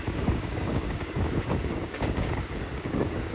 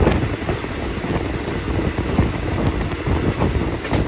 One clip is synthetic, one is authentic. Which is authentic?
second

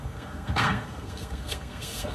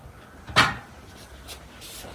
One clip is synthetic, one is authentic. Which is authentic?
second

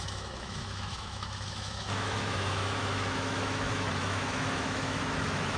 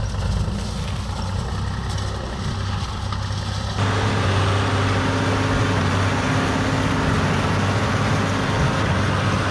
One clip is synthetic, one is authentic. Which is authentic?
second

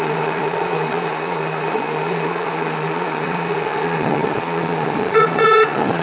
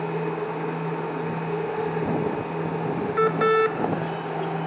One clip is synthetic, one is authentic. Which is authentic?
second